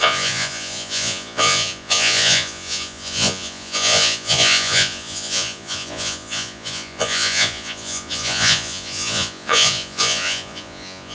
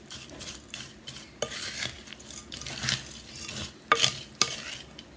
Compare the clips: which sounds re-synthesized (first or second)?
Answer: first